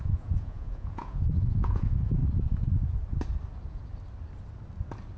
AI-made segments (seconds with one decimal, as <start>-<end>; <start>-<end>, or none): 0.0-2.2